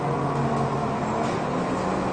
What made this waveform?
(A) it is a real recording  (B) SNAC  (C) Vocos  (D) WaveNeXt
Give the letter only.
A